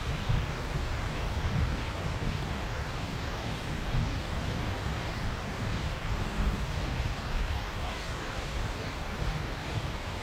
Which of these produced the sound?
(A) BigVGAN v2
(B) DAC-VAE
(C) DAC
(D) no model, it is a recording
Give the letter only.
C